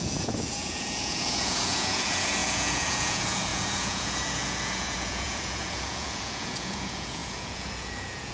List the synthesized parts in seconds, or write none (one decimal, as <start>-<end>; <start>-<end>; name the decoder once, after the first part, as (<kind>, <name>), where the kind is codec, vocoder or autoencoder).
0.0-8.3 (vocoder, Vocos)